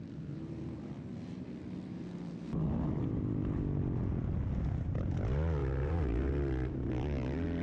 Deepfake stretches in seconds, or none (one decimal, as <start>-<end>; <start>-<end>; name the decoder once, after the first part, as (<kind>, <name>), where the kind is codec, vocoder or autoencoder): 5.6-6.3 (vocoder, BigVGAN v2)